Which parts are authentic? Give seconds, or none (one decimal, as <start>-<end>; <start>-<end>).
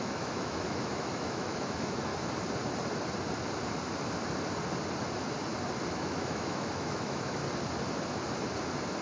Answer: 2.1-5.9; 7.4-9.0